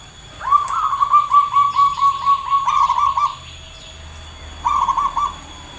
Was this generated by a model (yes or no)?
no